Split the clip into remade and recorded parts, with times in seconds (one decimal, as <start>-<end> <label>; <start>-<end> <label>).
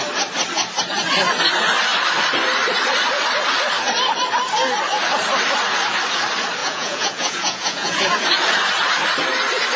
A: 0.0-6.6 recorded; 6.6-8.0 remade; 8.0-9.8 recorded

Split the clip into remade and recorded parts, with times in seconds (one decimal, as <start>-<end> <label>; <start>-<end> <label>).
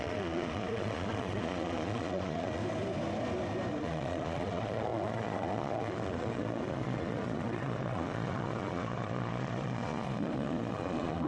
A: 0.0-2.6 remade; 2.6-3.8 recorded; 3.8-11.3 remade